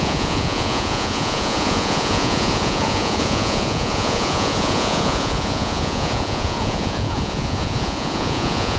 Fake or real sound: fake